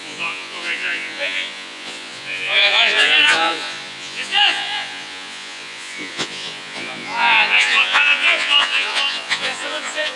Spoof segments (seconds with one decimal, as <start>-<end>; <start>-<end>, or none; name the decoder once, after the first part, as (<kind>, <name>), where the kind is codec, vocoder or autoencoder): 0.0-10.2 (vocoder, Vocos)